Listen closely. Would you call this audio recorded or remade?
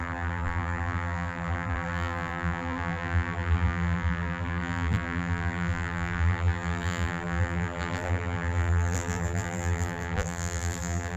remade